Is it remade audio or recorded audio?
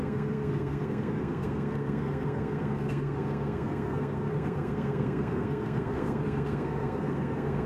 remade